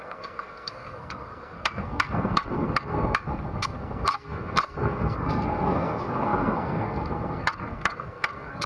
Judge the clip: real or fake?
fake